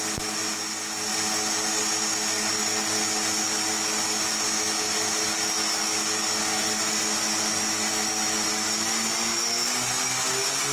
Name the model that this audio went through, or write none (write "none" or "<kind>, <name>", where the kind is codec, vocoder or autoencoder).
none